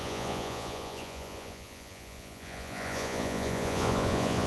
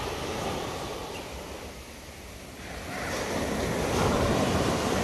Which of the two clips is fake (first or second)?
first